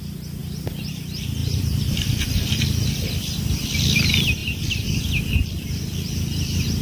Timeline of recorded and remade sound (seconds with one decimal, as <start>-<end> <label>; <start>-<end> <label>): 0.0-1.4 recorded; 1.4-3.3 remade; 3.3-4.4 recorded; 4.4-5.8 remade; 5.8-6.8 recorded